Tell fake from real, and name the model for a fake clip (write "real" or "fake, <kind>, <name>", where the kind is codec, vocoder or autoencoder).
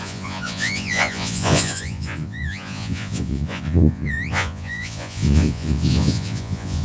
fake, vocoder, Vocos